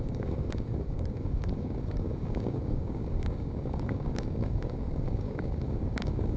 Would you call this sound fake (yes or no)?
yes